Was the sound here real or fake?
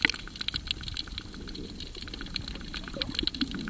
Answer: real